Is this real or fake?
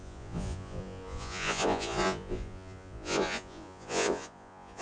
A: fake